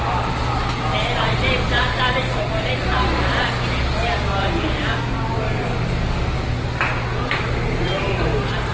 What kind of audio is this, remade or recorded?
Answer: recorded